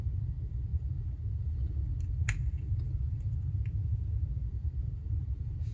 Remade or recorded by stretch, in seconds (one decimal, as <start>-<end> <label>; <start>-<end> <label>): 0.0-5.7 recorded